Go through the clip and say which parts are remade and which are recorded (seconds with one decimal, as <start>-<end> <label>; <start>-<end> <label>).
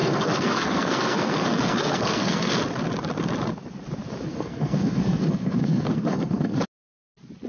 0.0-2.5 remade; 2.5-4.3 recorded; 4.3-6.6 remade; 6.6-7.5 recorded